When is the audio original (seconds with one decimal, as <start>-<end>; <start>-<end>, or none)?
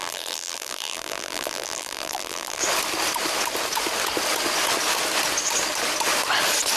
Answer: 2.6-6.8